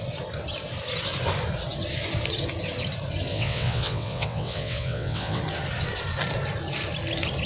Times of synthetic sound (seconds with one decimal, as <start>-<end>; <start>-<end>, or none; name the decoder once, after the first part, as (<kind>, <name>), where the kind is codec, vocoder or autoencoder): 3.3-5.4 (vocoder, WaveNeXt)